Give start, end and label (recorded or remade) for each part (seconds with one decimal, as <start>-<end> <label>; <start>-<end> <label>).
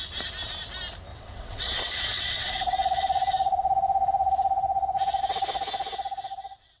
0.0-1.1 recorded; 1.1-5.2 remade; 5.2-6.3 recorded; 6.3-6.8 remade